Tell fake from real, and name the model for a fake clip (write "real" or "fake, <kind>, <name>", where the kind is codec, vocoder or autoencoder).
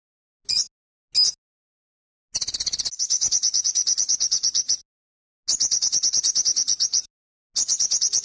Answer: real